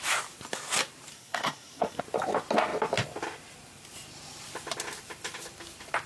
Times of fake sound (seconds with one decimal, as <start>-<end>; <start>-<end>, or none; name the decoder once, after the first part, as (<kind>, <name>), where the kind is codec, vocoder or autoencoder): 1.1-2.0 (codec, SNAC)